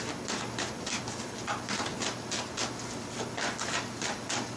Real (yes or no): yes